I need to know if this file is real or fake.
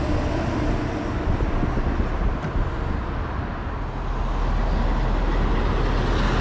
real